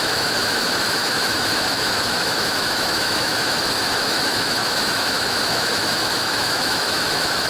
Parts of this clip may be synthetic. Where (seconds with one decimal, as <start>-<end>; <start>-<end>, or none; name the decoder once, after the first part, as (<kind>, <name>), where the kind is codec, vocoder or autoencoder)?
0.0-7.5 (autoencoder, DAC-VAE)